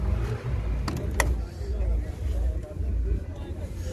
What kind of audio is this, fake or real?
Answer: real